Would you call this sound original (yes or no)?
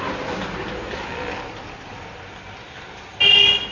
yes